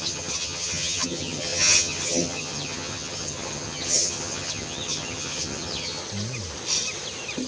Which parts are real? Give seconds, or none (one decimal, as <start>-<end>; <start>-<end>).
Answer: 6.0-7.5